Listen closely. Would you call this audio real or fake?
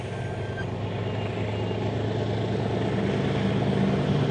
real